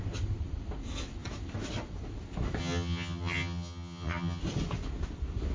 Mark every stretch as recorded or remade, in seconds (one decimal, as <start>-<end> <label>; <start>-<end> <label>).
0.0-2.6 recorded; 2.6-4.4 remade; 4.4-5.5 recorded